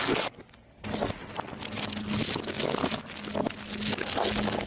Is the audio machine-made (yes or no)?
no